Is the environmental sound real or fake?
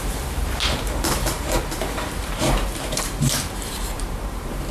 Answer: fake